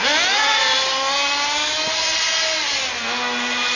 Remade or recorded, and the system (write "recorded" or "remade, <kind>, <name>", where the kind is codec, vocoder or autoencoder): recorded